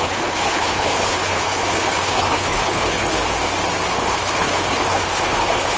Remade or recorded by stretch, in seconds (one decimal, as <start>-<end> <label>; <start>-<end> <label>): 0.0-3.2 remade; 3.2-3.9 recorded; 3.9-5.8 remade